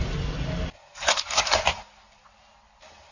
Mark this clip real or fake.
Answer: real